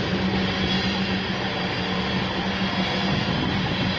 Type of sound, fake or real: real